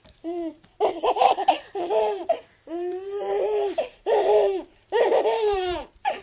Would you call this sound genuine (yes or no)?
no